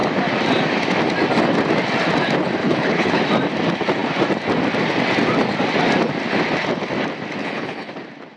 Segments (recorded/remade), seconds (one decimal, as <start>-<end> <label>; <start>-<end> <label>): 0.0-2.6 recorded; 2.6-3.2 remade; 3.2-7.4 recorded; 7.4-7.9 remade; 7.9-8.4 recorded